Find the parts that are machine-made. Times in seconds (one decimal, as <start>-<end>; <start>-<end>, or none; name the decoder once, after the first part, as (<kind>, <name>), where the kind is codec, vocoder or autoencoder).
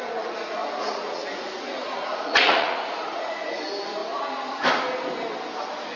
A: 0.6-3.6 (vocoder, Vocos)